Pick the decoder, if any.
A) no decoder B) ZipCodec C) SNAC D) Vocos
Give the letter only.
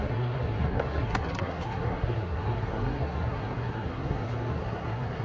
C